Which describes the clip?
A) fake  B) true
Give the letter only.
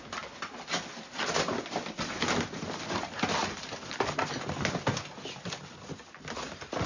B